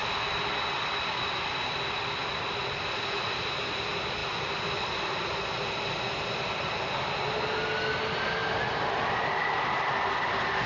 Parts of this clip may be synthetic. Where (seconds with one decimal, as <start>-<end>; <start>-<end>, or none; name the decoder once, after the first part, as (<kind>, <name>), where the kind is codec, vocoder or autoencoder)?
none